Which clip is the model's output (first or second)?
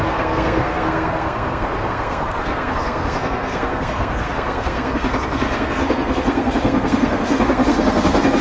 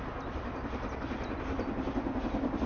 first